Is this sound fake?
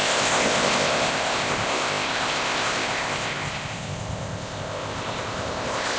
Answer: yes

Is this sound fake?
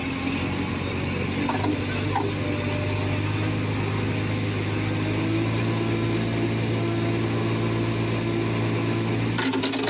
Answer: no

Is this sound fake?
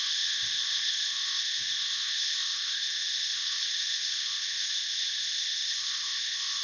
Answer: yes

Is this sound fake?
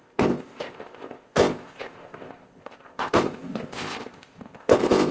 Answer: yes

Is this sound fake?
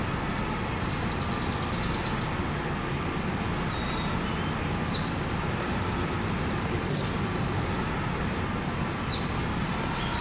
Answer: no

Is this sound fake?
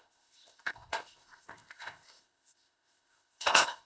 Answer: yes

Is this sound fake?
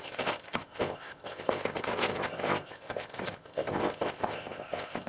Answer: yes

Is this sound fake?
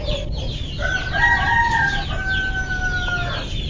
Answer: no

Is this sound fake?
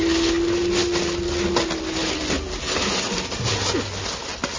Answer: no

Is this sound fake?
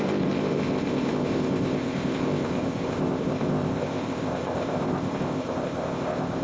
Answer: yes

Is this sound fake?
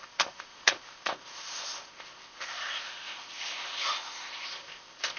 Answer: yes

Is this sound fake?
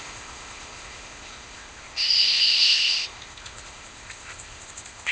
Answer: yes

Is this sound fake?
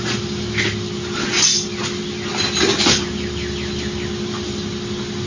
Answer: no